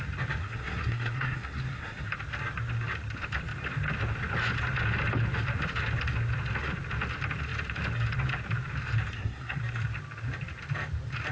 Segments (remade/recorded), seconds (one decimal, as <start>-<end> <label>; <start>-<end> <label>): 0.0-0.4 recorded; 0.4-2.1 remade; 2.1-9.1 recorded; 9.1-9.6 remade; 9.6-11.3 recorded